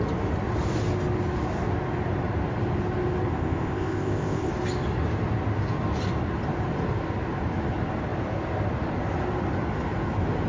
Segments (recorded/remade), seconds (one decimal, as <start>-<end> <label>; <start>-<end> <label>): 0.0-3.3 recorded; 3.3-4.5 remade; 4.5-10.5 recorded